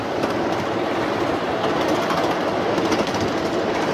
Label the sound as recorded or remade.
recorded